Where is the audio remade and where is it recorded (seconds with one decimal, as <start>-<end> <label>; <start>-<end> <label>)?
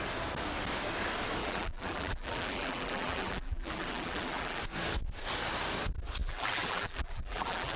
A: 0.0-1.4 recorded; 1.4-4.6 remade; 4.6-6.2 recorded; 6.2-7.8 remade